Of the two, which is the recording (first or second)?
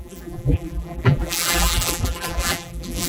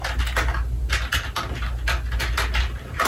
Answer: second